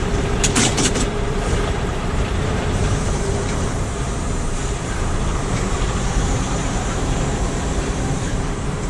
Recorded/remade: remade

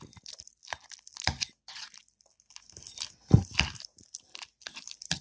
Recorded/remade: recorded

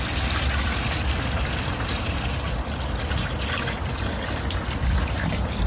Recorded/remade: remade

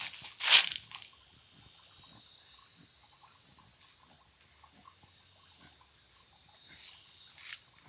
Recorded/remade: recorded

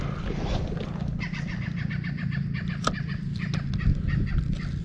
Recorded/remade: recorded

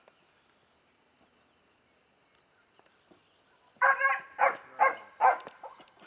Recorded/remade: recorded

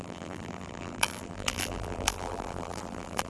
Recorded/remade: remade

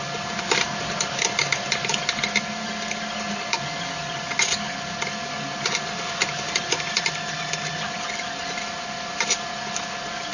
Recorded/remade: remade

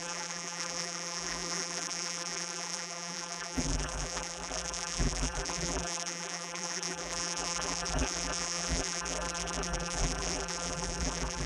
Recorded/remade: remade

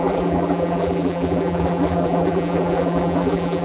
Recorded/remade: remade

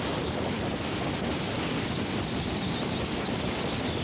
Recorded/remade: recorded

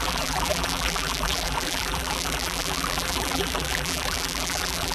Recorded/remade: remade